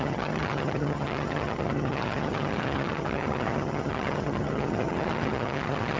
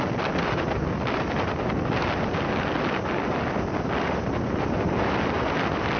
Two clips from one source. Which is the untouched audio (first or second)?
second